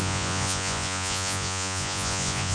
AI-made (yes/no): yes